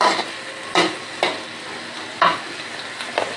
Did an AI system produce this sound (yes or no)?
no